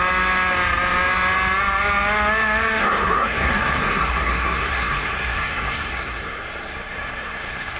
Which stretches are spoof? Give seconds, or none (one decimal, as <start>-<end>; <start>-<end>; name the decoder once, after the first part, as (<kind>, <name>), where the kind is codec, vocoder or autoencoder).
2.8-7.8 (codec, SNAC)